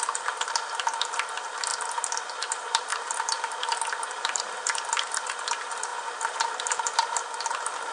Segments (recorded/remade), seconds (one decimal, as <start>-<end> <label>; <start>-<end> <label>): 0.0-1.7 remade; 1.7-2.5 recorded; 2.5-5.9 remade; 5.9-6.7 recorded; 6.7-7.9 remade